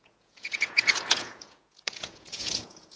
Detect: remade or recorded remade